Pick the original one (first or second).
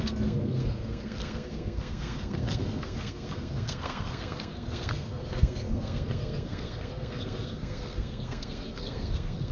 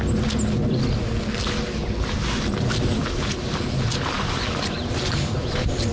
second